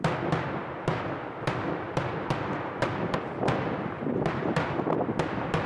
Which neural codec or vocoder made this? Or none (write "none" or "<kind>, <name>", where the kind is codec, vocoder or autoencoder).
none